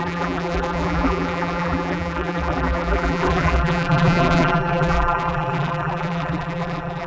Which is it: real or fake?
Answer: fake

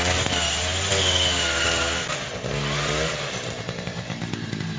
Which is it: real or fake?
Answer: real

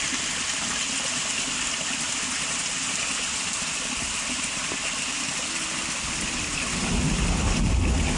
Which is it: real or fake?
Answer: real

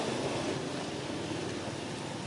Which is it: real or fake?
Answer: real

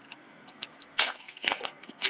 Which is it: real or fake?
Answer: fake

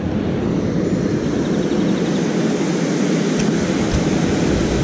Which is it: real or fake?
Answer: real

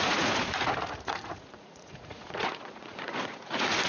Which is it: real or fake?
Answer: fake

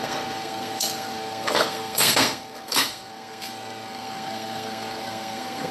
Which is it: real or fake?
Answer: fake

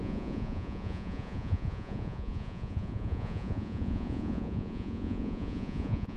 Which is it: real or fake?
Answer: fake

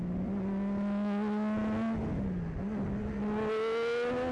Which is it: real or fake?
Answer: real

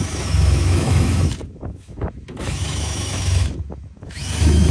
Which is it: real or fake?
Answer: fake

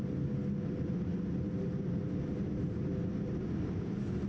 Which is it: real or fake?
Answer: real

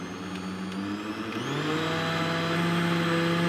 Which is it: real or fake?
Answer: real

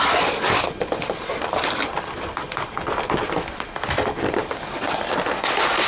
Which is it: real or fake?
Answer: real